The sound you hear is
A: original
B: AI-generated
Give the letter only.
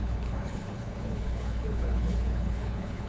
B